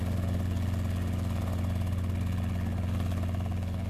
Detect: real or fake real